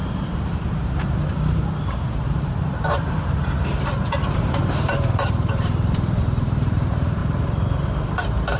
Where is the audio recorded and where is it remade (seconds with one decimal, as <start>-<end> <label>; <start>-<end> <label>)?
0.0-7.2 remade; 7.2-8.2 recorded; 8.2-8.6 remade

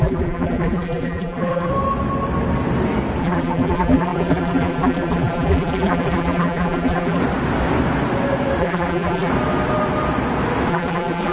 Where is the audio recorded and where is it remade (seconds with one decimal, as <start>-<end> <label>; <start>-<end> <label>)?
0.0-1.7 remade; 1.7-3.2 recorded; 3.2-7.2 remade; 7.2-8.6 recorded; 8.6-9.3 remade; 9.3-10.7 recorded; 10.7-11.3 remade